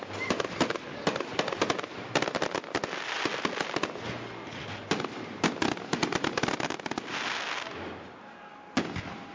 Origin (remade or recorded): recorded